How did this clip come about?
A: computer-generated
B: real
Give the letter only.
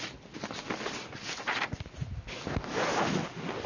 B